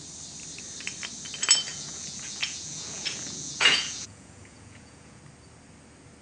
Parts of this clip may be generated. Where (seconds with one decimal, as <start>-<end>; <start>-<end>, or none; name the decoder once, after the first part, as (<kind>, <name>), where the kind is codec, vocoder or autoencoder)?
1.7-5.2 (vocoder, Vocos)